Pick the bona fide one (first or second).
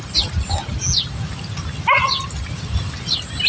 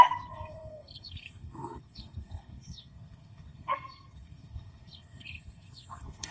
first